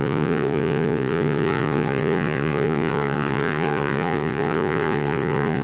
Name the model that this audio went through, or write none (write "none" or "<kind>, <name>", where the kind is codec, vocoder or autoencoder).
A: vocoder, Vocos